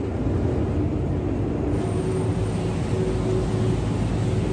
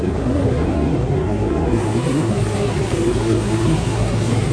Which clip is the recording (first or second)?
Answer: first